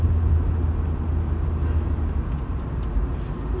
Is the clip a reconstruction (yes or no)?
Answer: no